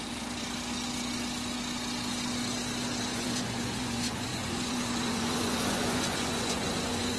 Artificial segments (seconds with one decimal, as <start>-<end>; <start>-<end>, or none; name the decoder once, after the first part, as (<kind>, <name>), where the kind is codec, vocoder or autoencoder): 3.1-7.2 (vocoder, Vocos)